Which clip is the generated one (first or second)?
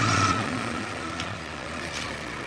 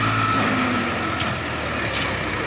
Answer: first